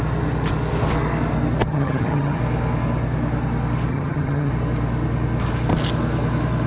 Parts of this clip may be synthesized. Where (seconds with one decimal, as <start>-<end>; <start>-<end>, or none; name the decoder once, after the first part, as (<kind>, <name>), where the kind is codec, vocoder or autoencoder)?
1.7-2.4 (vocoder, HiFi-GAN); 3.9-4.5